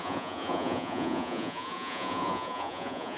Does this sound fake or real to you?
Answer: fake